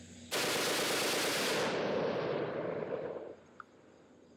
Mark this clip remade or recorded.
recorded